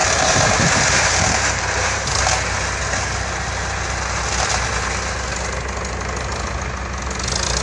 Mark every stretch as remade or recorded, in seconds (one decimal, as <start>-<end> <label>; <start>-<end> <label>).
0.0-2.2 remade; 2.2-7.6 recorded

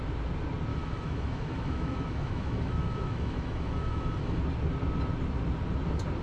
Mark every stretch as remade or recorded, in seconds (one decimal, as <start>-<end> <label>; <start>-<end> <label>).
0.0-0.7 recorded; 0.7-4.4 remade; 4.4-6.2 recorded

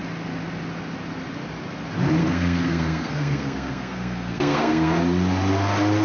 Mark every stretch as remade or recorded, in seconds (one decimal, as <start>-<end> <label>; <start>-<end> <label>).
0.0-2.2 recorded; 2.2-5.0 remade; 5.0-6.0 recorded

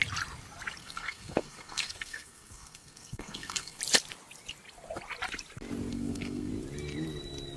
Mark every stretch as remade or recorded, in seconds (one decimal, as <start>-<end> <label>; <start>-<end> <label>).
0.0-0.8 recorded; 0.8-3.8 remade; 3.8-5.9 recorded; 5.9-6.5 remade; 6.5-7.6 recorded

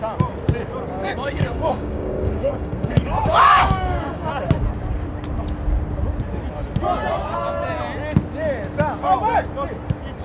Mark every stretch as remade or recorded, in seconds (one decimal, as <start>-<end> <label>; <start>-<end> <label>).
0.0-1.0 recorded; 1.0-4.3 remade; 4.3-10.2 recorded